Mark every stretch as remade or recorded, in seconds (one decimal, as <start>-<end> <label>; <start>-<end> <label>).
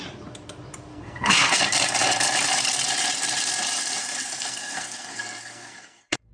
0.0-0.9 recorded; 0.9-1.6 remade; 1.6-4.0 recorded; 4.0-6.3 remade